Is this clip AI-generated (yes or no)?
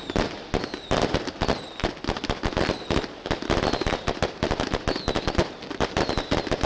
no